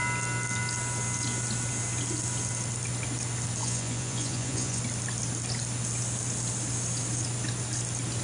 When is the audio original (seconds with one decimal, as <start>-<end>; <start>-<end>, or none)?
0.0-3.6; 4.8-8.2